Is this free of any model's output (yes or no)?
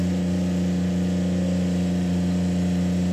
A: yes